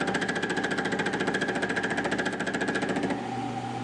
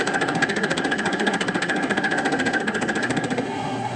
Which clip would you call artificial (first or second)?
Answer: second